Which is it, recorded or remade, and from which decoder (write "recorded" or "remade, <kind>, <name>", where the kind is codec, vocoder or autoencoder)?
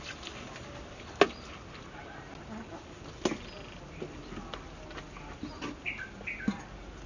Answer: recorded